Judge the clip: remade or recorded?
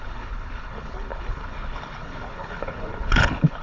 remade